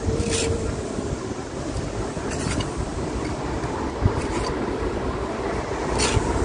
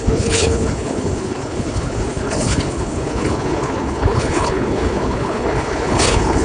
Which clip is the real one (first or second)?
first